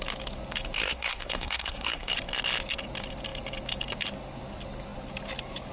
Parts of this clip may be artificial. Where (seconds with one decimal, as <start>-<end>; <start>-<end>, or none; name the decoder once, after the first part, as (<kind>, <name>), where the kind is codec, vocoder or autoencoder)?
0.8-2.1 (codec, SNAC)